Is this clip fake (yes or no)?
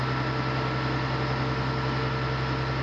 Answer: no